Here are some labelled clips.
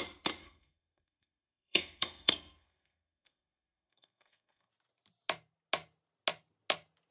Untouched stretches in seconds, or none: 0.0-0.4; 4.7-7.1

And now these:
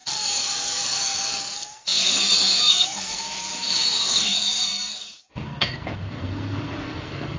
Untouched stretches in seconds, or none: none

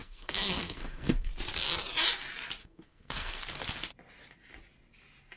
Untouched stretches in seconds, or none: 1.3-2.6; 3.4-5.4

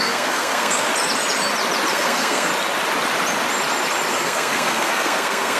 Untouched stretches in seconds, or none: 0.9-1.9; 2.5-4.1

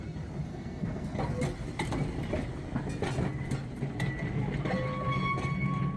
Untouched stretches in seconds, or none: 0.0-0.5; 1.2-6.0

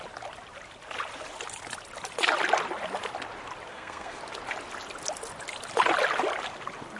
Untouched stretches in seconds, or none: 0.0-3.7; 4.2-7.0

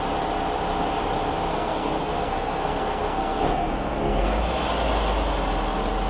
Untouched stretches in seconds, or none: 0.0-1.5; 4.4-6.1

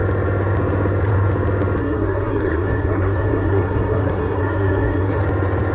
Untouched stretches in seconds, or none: 0.0-1.8; 5.2-5.7